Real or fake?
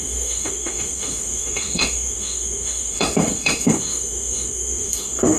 fake